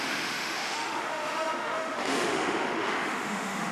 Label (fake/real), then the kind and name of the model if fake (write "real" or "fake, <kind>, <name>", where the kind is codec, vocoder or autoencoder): fake, autoencoder, DAC-VAE